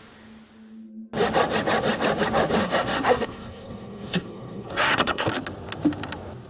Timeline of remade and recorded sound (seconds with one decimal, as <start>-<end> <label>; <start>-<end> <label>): 0.0-2.6 recorded; 2.6-5.3 remade; 5.3-6.5 recorded